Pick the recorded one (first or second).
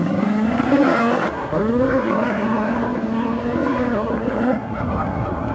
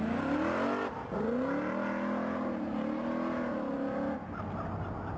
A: second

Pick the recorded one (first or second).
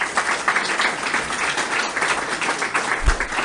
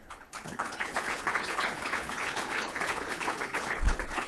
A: first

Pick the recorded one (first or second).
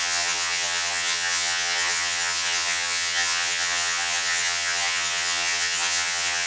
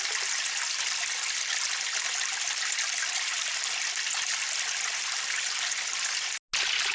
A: second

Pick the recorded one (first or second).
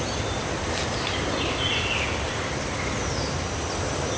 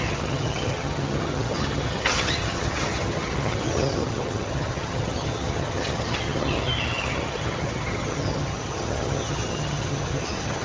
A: first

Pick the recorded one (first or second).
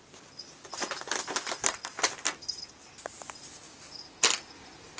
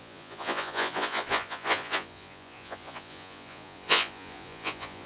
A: first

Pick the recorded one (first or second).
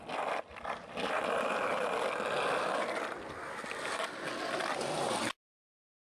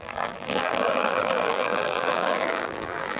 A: first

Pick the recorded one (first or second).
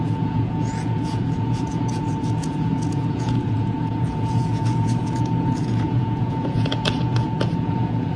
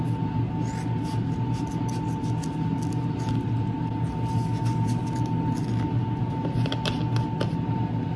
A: second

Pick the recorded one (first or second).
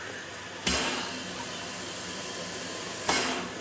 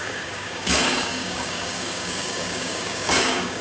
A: first